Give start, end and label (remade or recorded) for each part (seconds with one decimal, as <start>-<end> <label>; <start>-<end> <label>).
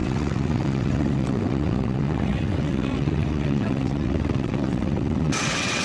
0.0-5.8 remade